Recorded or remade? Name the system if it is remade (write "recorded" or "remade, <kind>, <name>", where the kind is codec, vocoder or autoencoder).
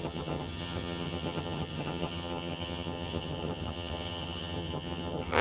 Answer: remade, vocoder, HiFi-GAN